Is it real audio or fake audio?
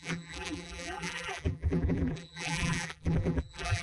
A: fake